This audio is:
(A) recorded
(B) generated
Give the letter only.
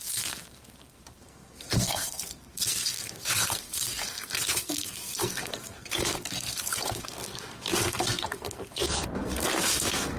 B